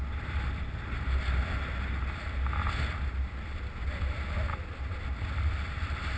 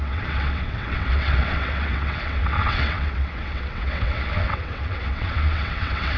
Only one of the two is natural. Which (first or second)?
first